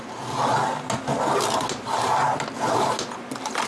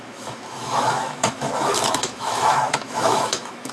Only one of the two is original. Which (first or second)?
first